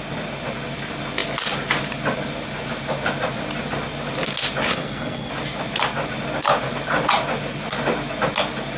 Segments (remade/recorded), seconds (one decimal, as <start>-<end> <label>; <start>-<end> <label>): 0.0-4.7 recorded; 4.7-5.3 remade; 5.3-8.8 recorded